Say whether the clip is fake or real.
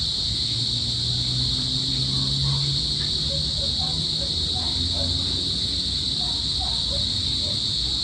real